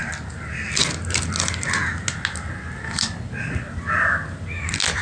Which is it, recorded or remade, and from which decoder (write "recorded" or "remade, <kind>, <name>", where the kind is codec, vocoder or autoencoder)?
recorded